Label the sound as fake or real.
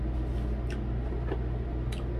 real